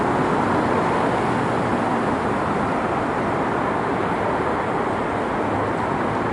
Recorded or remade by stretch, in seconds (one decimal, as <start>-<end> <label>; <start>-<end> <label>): 0.0-6.3 recorded